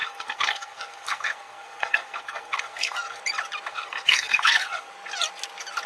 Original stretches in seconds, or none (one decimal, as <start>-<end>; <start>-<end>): 3.2-3.7; 4.9-5.9